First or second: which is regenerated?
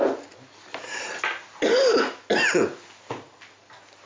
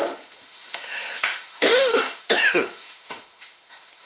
second